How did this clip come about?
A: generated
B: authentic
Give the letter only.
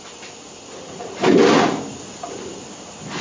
B